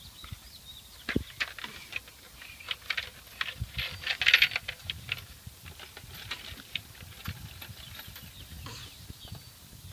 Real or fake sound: real